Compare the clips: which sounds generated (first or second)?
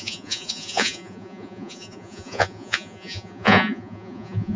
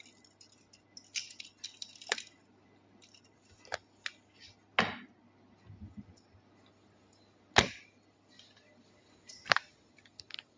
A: first